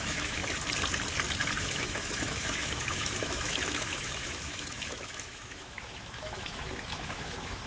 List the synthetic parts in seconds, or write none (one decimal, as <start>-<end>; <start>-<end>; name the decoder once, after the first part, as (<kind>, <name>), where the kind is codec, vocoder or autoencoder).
0.0-0.4 (autoencoder, DAC-VAE); 1.6-7.7